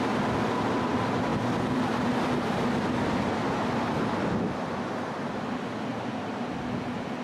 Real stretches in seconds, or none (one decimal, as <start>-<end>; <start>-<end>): 0.0-1.3; 2.7-5.9; 6.4-7.2